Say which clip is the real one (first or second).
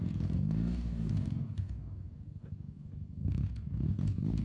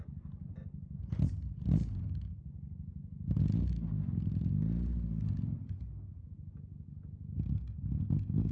second